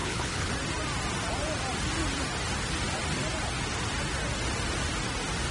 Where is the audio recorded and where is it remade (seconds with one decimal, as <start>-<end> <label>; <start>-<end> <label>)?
0.0-0.5 remade; 0.5-5.5 recorded